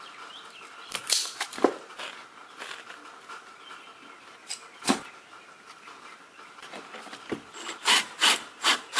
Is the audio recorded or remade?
recorded